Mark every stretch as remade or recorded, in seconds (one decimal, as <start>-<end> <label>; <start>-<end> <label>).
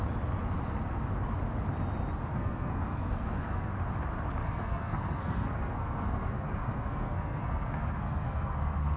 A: 0.0-2.3 recorded; 2.3-3.7 remade; 3.7-4.4 recorded; 4.4-9.0 remade